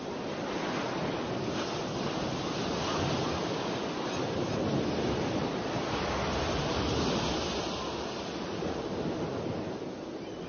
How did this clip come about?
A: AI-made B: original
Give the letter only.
B